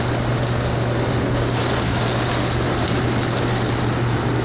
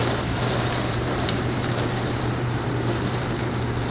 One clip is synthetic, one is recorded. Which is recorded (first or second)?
first